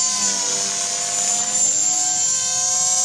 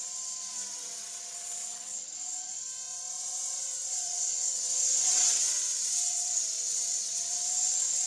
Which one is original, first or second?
first